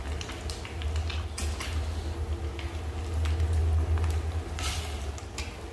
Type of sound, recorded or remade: recorded